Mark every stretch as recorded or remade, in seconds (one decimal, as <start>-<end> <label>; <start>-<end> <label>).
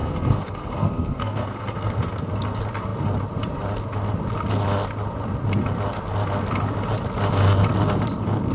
0.0-2.3 remade; 2.3-8.5 recorded